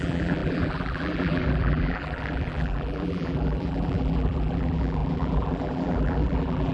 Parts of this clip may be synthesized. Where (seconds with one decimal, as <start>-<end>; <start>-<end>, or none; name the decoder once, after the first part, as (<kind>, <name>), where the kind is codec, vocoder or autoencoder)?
0.0-6.7 (vocoder, BigVGAN v2)